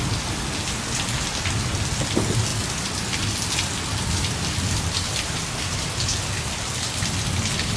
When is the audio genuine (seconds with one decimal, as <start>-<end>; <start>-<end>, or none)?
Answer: 0.0-6.1; 6.8-7.8